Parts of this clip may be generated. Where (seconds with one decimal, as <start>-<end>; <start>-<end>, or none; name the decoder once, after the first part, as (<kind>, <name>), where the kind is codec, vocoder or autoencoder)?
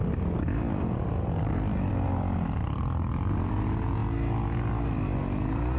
none